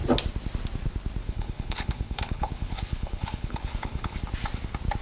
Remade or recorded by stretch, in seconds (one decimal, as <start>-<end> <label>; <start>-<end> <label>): 0.0-1.2 recorded; 1.2-4.2 remade; 4.2-5.0 recorded